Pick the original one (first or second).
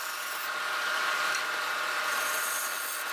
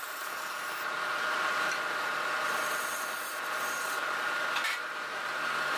first